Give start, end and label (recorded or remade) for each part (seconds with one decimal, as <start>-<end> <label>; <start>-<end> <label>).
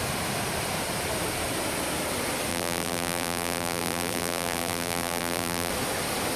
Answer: 0.0-2.5 recorded; 2.5-5.7 remade; 5.7-6.4 recorded